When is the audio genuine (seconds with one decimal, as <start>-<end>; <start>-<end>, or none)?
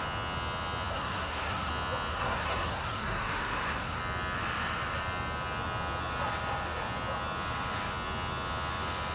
0.0-0.9; 1.7-2.1; 4.0-9.1